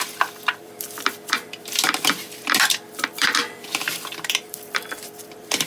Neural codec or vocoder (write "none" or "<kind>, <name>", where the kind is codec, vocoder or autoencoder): vocoder, BigVGAN v2